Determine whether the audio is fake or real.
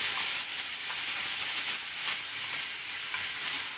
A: real